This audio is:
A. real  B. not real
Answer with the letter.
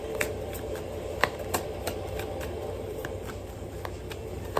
B